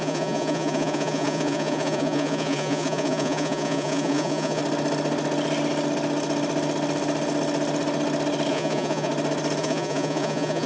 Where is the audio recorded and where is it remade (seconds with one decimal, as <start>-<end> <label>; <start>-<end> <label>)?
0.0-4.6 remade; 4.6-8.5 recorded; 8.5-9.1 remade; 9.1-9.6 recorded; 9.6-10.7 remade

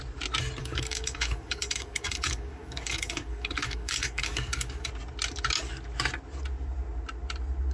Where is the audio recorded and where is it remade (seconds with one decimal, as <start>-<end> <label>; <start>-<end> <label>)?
0.0-0.6 recorded; 0.6-4.9 remade; 4.9-7.7 recorded

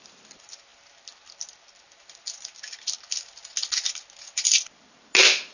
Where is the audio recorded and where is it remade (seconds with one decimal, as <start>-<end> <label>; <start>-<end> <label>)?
0.0-5.5 recorded

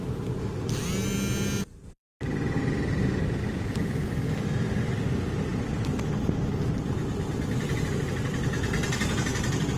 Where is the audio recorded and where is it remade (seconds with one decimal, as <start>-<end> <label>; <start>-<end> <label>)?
0.0-5.5 recorded; 5.5-6.1 remade; 6.1-9.8 recorded

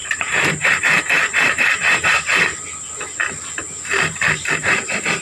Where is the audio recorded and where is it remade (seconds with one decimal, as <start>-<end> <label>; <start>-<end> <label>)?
0.0-2.3 remade; 2.3-4.0 recorded; 4.0-5.2 remade

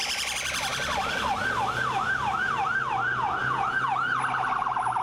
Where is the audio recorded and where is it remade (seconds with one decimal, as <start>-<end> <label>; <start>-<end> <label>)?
0.0-3.4 recorded; 3.4-4.2 remade; 4.2-5.0 recorded

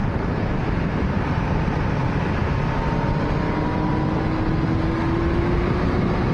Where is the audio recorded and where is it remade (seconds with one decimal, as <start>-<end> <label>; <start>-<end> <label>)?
0.0-2.4 remade; 2.4-5.1 recorded; 5.1-6.3 remade

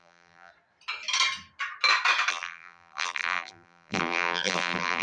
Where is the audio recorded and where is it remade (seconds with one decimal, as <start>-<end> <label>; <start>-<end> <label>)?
0.0-0.5 remade; 0.5-2.3 recorded; 2.3-5.0 remade